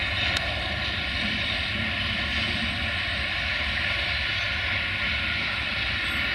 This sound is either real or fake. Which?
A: real